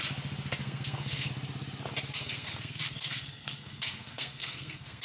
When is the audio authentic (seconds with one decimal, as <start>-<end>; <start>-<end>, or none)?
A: 0.0-0.6; 1.3-2.2